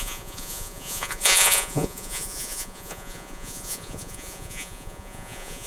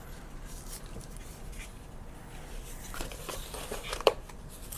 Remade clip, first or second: first